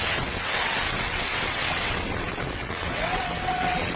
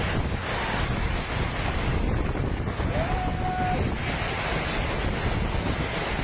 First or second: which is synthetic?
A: first